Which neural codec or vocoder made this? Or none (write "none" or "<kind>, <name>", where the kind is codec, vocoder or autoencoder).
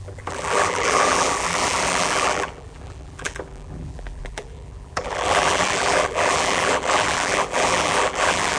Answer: vocoder, BigVGAN v2